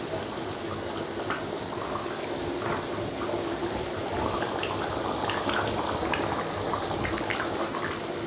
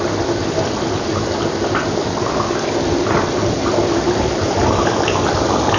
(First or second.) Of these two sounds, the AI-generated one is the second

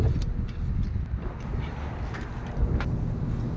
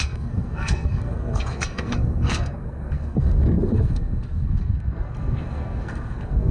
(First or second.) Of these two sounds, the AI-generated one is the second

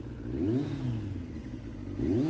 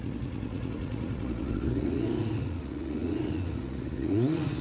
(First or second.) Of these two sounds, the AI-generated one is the second